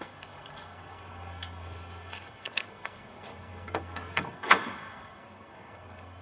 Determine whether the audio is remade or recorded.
remade